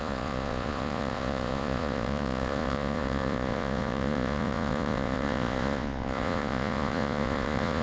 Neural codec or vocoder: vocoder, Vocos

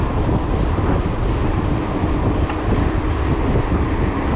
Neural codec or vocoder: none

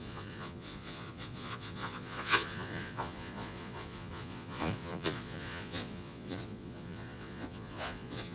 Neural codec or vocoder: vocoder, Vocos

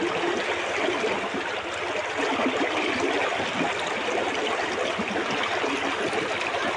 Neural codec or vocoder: none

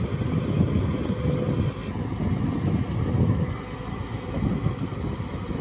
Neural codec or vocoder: none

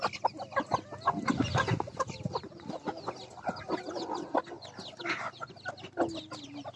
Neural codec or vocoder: none